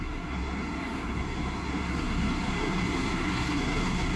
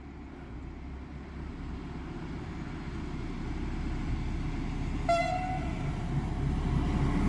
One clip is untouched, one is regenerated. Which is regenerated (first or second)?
first